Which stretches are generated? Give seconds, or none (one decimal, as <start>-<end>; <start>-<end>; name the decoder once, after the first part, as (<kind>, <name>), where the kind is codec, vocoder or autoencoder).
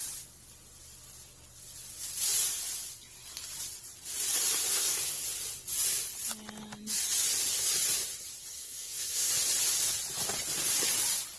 4.7-5.2 (codec, SNAC); 8.5-9.3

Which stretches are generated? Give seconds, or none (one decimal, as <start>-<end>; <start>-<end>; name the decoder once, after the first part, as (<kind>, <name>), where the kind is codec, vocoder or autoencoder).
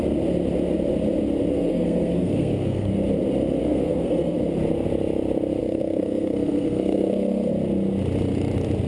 1.5-2.9 (codec, SNAC); 3.6-4.4; 5.6-7.5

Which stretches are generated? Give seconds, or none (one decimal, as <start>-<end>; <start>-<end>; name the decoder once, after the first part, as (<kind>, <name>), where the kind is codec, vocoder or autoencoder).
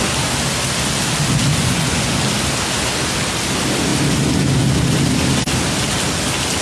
1.6-2.2 (vocoder, Vocos)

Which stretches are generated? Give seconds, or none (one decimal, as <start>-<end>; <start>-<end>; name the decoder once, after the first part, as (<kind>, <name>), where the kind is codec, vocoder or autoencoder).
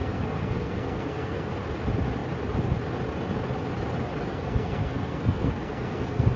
0.0-1.5 (codec, SNAC); 4.3-6.4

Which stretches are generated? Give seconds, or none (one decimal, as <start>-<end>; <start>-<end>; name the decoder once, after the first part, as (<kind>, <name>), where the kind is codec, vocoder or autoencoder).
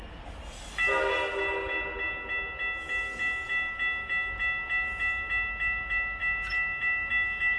none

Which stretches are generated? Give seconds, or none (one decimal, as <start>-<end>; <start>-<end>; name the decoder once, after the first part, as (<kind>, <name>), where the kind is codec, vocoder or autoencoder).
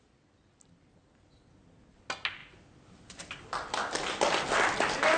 none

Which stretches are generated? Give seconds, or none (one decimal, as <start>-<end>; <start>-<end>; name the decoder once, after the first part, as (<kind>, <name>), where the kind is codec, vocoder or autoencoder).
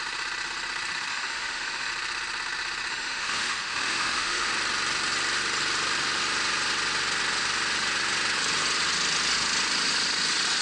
1.1-1.9 (autoencoder, DAC-VAE); 2.9-4.5